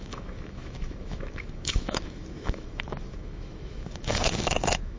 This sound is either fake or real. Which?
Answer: fake